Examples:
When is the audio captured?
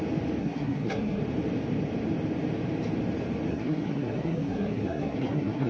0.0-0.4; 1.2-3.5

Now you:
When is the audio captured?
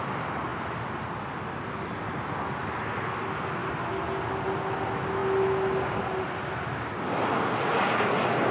0.0-8.5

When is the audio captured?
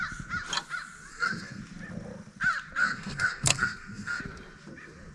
0.0-1.1; 1.6-2.8; 4.2-5.1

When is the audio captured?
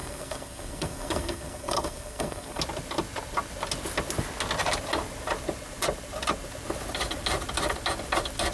2.6-8.5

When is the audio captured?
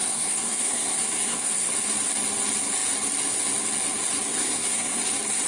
1.7-4.3; 5.0-5.5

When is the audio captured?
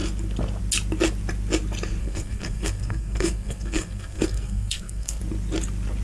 0.0-2.0; 5.2-6.0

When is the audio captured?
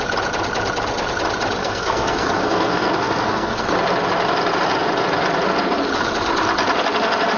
0.0-1.6; 3.7-7.4